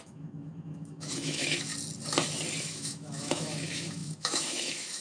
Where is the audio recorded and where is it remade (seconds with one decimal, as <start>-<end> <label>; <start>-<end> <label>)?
0.0-1.7 remade; 1.7-2.6 recorded; 2.6-5.0 remade